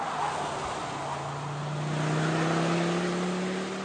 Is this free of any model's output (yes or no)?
yes